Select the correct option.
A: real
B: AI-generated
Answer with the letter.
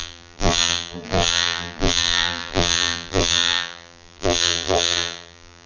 B